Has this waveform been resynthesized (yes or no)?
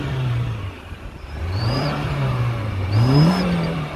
yes